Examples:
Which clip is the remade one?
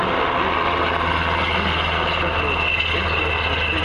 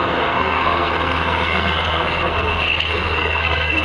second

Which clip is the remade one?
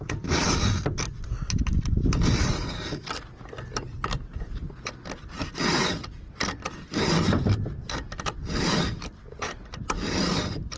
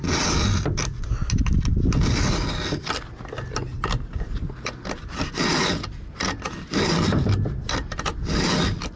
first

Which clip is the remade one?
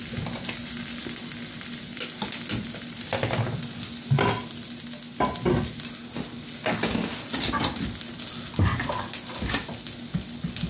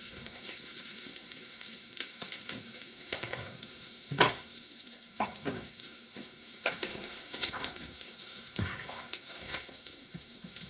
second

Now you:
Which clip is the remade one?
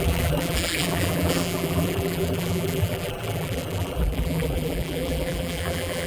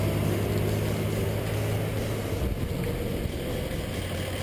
first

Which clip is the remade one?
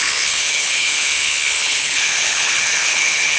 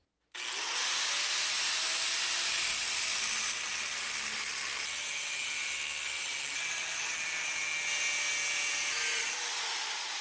first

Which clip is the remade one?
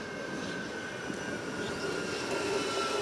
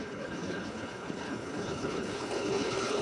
second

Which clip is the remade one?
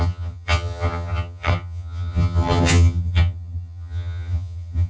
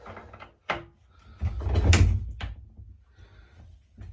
first